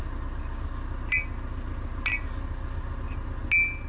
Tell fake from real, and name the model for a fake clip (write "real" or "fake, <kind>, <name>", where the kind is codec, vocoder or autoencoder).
real